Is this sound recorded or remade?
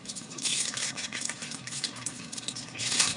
remade